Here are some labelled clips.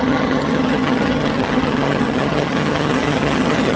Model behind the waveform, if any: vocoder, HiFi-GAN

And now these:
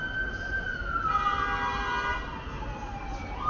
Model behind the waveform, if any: none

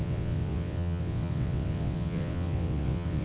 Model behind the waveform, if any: vocoder, WaveNeXt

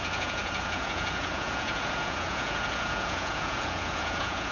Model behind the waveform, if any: vocoder, Vocos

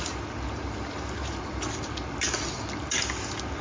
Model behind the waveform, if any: none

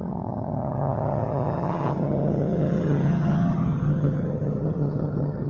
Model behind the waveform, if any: vocoder, HiFi-GAN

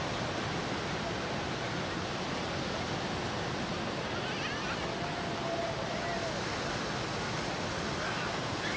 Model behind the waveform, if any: none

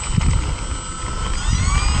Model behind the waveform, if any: none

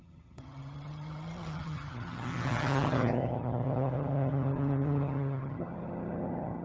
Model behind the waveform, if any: vocoder, HiFi-GAN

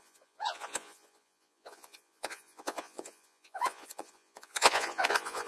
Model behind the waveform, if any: vocoder, Vocos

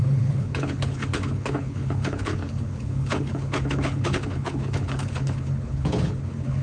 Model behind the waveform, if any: codec, HILCodec